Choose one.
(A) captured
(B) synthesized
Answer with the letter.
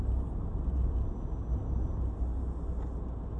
A